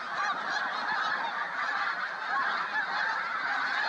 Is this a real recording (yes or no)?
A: yes